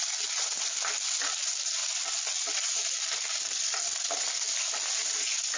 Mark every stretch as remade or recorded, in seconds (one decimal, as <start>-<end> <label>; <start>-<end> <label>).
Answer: 0.0-5.6 recorded